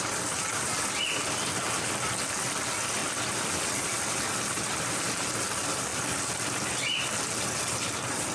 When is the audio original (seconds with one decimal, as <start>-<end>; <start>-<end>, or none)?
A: 0.0-8.3